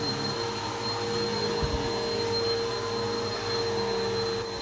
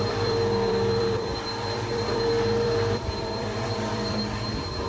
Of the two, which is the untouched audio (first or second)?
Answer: first